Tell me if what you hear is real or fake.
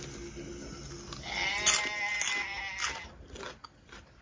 real